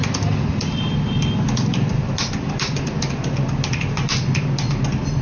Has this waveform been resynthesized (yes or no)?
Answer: no